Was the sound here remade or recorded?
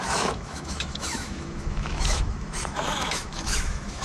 remade